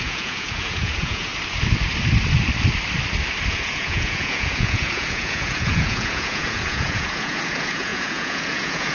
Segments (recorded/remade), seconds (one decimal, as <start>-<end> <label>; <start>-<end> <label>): 0.0-1.3 remade; 1.3-3.5 recorded; 3.5-8.9 remade

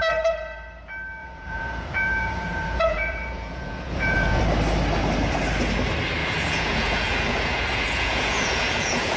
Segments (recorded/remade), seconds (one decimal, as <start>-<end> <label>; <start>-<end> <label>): 0.0-1.2 recorded; 1.2-4.4 remade; 4.4-6.2 recorded; 6.2-9.2 remade

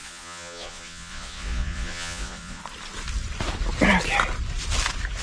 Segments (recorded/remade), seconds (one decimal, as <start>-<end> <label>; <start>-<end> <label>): 0.0-2.6 remade; 2.6-5.2 recorded